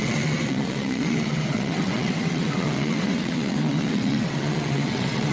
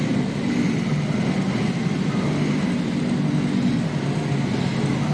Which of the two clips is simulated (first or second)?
first